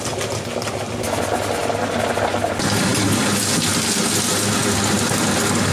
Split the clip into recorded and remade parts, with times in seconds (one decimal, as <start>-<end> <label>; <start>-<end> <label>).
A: 0.0-5.7 recorded